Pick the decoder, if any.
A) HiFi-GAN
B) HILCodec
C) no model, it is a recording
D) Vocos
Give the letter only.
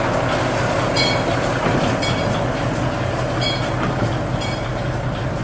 C